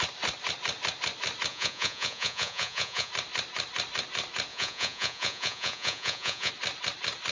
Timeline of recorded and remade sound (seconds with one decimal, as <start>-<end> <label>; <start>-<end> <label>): 0.0-1.5 recorded; 1.5-3.1 remade; 3.1-4.5 recorded; 4.5-6.5 remade; 6.5-7.3 recorded